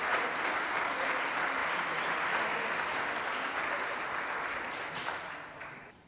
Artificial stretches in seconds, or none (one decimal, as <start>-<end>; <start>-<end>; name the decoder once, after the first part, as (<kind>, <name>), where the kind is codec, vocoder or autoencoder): 0.0-1.6 (vocoder, BigVGAN v2); 4.8-6.1